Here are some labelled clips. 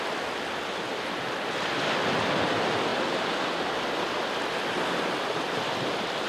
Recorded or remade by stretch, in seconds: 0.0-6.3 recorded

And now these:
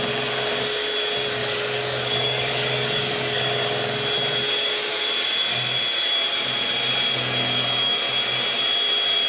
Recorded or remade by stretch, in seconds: 0.0-1.4 recorded; 1.4-3.6 remade; 3.6-9.3 recorded

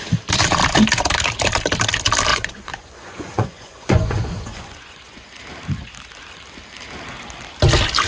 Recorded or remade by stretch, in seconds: 0.0-2.3 recorded; 2.3-5.4 remade; 5.4-8.1 recorded

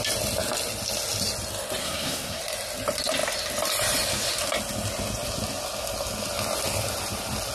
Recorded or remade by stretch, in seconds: 0.0-1.8 recorded; 1.8-2.4 remade; 2.4-7.5 recorded

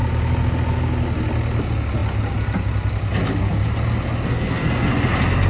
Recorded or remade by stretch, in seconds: 0.0-4.3 recorded; 4.3-4.9 remade; 4.9-5.5 recorded